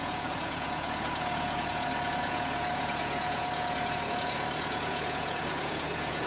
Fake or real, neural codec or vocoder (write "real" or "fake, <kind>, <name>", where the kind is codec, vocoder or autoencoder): fake, vocoder, Vocos